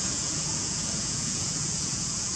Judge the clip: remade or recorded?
remade